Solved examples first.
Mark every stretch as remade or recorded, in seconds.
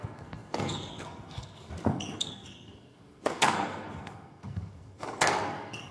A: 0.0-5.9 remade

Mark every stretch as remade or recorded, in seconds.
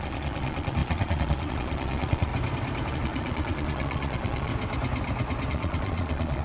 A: 0.0-2.3 remade; 2.3-2.9 recorded; 2.9-4.5 remade; 4.5-5.5 recorded; 5.5-6.4 remade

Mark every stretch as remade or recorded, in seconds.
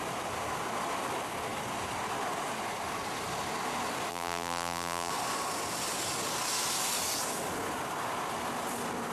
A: 0.0-4.1 recorded; 4.1-5.1 remade; 5.1-9.1 recorded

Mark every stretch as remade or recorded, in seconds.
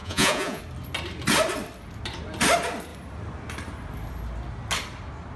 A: 0.0-0.6 remade; 0.6-5.4 recorded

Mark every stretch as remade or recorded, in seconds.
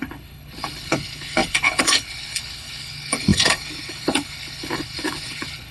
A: 0.0-5.7 remade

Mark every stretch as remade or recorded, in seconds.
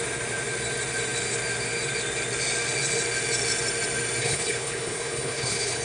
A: 0.0-4.2 recorded; 4.2-5.8 remade